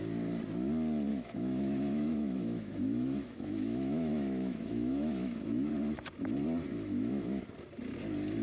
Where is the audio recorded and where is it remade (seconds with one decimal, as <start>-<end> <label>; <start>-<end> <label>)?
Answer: 0.0-1.1 recorded; 1.1-5.7 remade; 5.7-6.7 recorded; 6.7-7.4 remade; 7.4-8.4 recorded